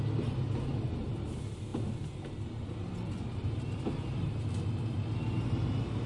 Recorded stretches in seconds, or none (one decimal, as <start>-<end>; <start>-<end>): 0.0-1.7; 3.8-6.1